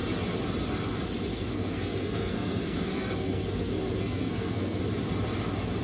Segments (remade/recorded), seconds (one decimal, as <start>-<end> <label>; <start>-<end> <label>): 0.0-1.3 recorded; 1.3-4.8 remade; 4.8-5.8 recorded